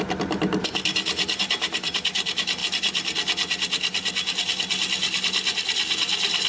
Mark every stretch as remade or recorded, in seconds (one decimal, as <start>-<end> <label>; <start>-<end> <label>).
0.0-6.5 recorded